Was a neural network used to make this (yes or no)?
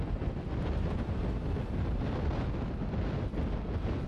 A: no